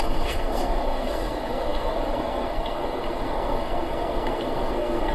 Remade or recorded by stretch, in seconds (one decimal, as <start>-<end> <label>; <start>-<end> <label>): 0.0-5.1 remade

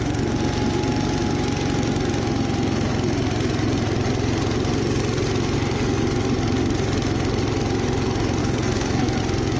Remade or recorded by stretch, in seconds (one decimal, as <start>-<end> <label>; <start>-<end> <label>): 0.0-8.4 recorded; 8.4-9.2 remade; 9.2-9.6 recorded

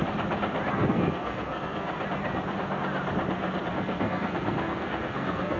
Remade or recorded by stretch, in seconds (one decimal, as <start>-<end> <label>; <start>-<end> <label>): 0.0-0.7 recorded; 0.7-1.9 remade; 1.9-3.7 recorded; 3.7-5.6 remade

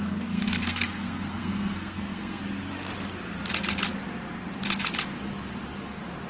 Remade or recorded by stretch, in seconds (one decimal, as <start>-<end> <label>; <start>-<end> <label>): 0.0-2.4 remade; 2.4-6.3 recorded